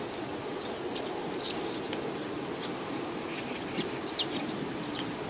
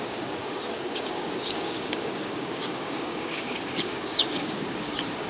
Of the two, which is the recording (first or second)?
first